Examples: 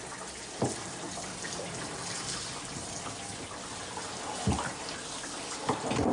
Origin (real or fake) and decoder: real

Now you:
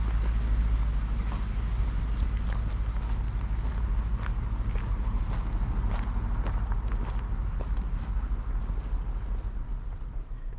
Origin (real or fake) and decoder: real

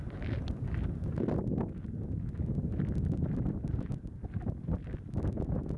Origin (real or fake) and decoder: real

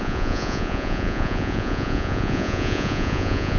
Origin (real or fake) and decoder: fake, vocoder, Vocos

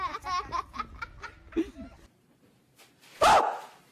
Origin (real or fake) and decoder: real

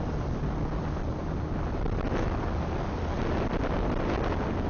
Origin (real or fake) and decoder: real